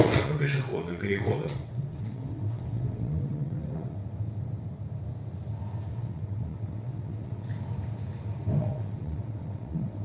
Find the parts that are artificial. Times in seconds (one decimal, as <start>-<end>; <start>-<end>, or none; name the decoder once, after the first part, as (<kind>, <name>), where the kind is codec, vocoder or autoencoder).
0.0-4.0 (vocoder, WaveNeXt); 5.9-7.5; 8.6-10.0